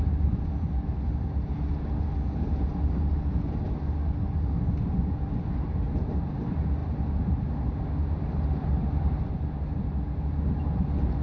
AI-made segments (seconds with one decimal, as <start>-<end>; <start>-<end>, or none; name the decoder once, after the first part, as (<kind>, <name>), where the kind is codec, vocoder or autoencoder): none